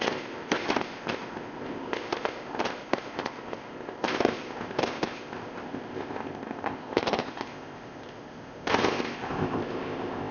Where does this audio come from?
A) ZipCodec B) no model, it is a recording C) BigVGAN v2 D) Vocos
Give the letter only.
A